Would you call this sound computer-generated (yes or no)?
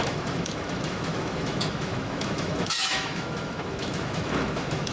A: yes